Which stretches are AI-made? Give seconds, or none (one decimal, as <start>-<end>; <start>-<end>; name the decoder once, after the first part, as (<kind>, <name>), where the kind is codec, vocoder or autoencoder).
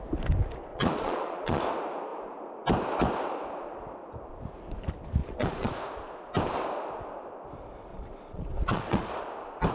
0.7-1.6 (vocoder, Vocos); 5.2-5.7; 7.9-9.2